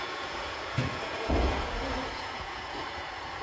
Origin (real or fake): fake